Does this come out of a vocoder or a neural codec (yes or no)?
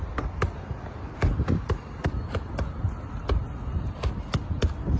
no